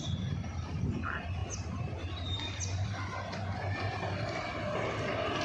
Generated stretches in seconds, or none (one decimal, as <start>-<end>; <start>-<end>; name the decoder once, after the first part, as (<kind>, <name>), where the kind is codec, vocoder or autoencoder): none